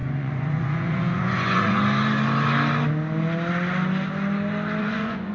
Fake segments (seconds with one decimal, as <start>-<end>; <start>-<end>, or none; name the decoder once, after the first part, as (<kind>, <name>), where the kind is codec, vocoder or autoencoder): 0.0-1.8 (vocoder, Vocos); 4.8-5.3